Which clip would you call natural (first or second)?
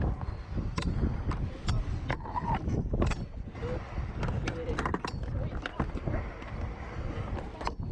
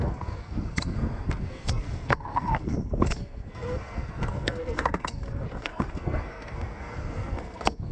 first